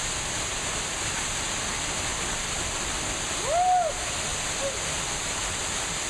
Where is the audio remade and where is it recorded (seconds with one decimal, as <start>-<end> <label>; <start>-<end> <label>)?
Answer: 0.0-6.1 recorded

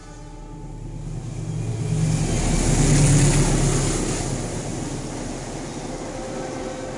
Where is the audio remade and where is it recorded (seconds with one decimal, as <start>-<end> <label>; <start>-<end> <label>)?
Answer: 0.0-7.0 recorded

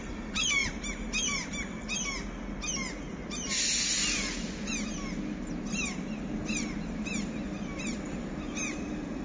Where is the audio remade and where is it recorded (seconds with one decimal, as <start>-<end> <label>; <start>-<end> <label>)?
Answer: 0.0-9.2 recorded

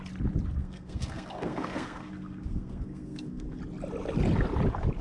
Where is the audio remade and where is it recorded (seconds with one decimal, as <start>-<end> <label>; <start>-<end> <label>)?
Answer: 0.0-0.6 recorded; 0.6-3.6 remade; 3.6-5.0 recorded

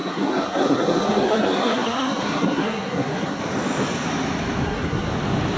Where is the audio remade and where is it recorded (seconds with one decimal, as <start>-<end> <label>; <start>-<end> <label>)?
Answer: 0.0-3.4 remade; 3.4-4.6 recorded; 4.6-5.1 remade; 5.1-5.6 recorded